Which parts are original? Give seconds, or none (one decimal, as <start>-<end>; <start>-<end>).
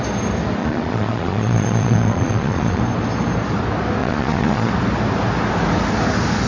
0.0-0.6; 2.8-4.0; 4.7-6.5